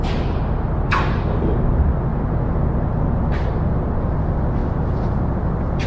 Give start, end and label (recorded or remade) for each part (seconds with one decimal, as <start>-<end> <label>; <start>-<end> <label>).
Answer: 0.0-5.9 recorded